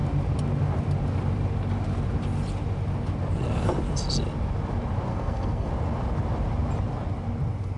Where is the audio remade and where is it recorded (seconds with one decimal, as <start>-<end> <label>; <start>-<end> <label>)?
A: 0.0-5.1 recorded; 5.1-5.7 remade; 5.7-7.8 recorded